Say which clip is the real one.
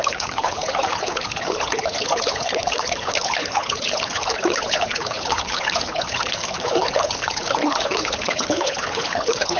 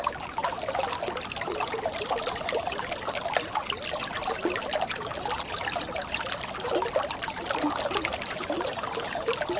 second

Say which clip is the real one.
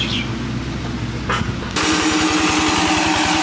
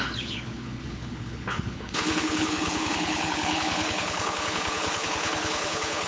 first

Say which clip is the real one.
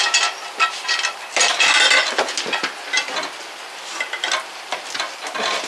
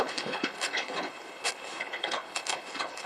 first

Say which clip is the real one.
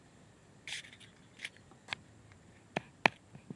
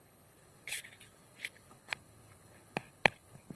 first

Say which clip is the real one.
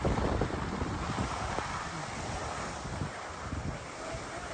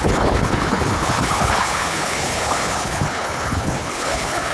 first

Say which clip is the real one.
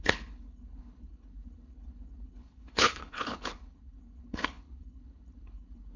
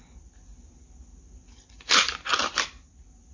second